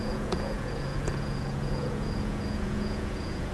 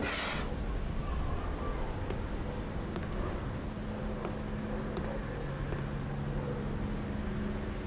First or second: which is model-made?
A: first